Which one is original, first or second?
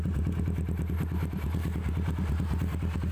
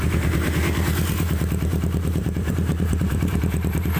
first